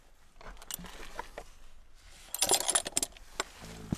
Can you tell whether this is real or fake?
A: real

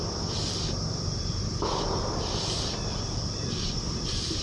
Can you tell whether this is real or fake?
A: fake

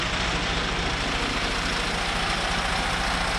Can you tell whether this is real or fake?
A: real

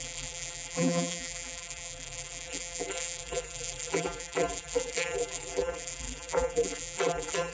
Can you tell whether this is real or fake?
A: fake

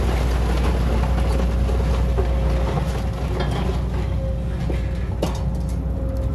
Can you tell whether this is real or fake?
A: real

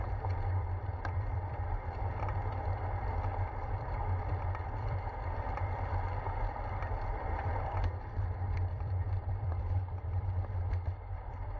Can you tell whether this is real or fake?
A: fake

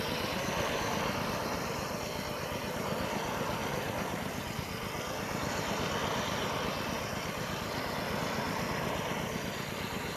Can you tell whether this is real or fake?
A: real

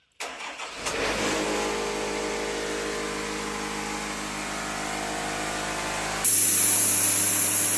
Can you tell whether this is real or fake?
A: real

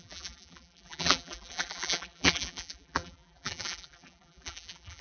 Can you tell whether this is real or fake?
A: fake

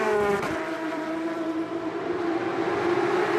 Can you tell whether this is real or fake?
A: fake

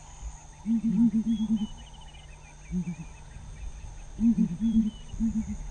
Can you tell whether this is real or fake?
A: real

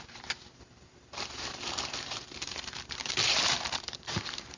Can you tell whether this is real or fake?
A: fake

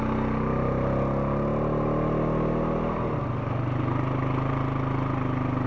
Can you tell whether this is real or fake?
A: real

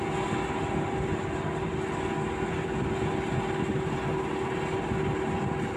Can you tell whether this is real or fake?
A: real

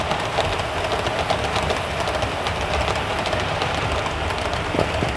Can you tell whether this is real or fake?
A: real